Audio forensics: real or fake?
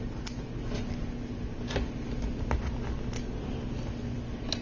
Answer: real